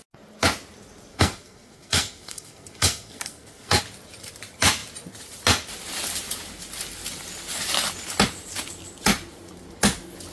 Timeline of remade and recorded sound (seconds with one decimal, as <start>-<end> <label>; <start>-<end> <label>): 0.0-1.1 recorded; 1.1-3.8 remade; 3.8-10.3 recorded